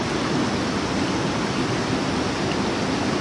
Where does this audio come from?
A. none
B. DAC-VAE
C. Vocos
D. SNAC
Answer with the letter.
A